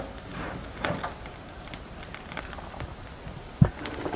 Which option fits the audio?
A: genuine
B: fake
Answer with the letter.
A